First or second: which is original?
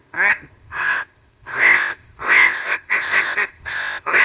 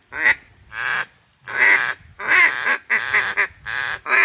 second